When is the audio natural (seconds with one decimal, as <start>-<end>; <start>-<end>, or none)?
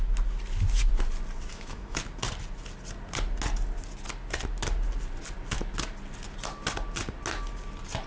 0.0-1.5; 2.0-8.1